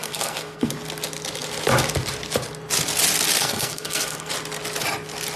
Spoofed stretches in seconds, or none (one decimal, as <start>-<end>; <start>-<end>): 0.0-0.7; 3.4-4.3